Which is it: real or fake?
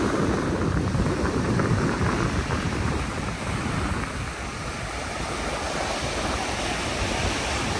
real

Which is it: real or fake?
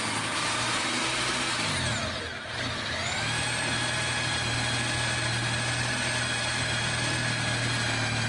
real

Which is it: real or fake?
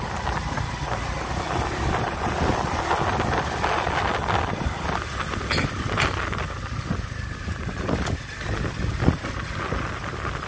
real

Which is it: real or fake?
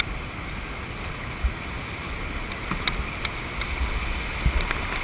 real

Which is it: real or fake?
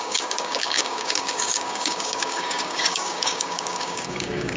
fake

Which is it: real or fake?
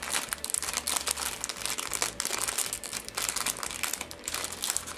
real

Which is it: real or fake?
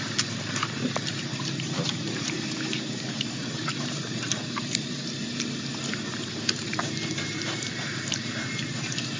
fake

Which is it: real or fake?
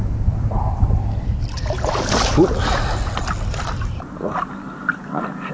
real